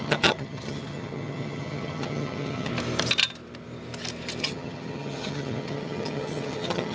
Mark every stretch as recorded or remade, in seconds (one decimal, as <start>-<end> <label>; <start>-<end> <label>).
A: 0.0-2.7 remade; 2.7-4.4 recorded; 4.4-6.9 remade